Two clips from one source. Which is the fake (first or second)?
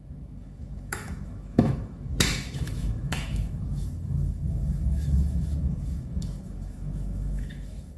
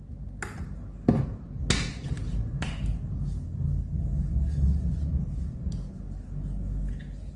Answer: first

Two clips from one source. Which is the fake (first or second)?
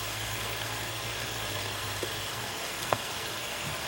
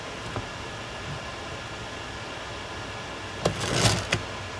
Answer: first